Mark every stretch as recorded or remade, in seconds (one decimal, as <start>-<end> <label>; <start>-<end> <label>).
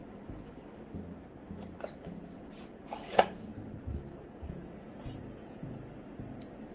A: 0.0-2.7 recorded; 2.7-3.5 remade; 3.5-4.1 recorded; 4.1-5.2 remade; 5.2-6.7 recorded